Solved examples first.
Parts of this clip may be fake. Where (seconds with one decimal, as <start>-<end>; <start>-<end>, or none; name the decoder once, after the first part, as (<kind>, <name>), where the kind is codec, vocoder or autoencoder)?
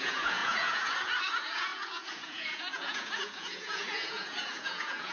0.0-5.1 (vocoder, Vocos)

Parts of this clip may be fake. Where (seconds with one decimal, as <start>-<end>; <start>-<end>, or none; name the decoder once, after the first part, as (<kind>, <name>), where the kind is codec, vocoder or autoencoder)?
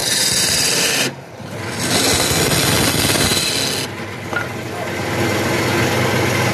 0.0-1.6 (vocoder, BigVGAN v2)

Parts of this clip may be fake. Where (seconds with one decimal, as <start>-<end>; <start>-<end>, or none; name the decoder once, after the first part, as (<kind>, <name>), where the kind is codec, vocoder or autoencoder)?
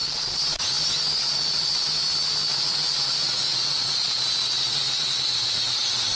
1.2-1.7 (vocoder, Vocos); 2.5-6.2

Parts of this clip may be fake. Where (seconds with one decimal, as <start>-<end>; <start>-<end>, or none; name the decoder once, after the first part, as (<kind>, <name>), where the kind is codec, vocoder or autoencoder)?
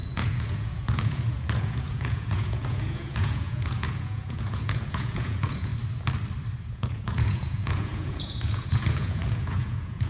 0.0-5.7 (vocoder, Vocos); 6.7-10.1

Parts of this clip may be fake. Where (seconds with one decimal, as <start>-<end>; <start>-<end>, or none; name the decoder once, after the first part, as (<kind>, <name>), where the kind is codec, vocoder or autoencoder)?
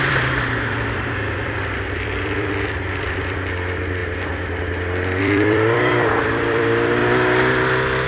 0.0-4.0 (vocoder, BigVGAN v2); 5.2-7.0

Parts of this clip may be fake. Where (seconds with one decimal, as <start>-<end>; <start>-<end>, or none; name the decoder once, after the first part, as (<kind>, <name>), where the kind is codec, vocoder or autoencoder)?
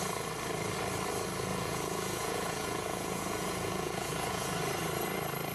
1.5-4.6 (vocoder, Vocos)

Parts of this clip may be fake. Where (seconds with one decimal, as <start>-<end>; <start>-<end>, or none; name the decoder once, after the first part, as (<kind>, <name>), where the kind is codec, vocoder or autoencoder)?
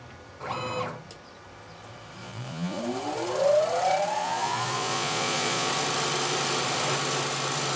2.2-2.8 (vocoder, Vocos); 4.2-5.7